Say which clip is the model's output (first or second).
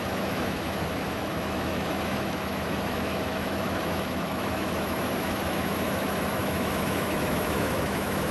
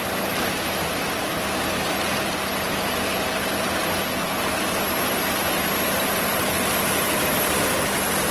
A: first